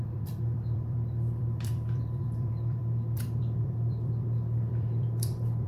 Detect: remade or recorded remade